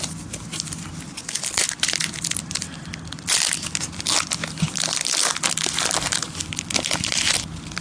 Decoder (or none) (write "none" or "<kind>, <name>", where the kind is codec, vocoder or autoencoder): none